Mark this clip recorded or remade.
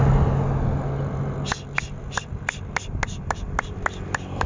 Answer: recorded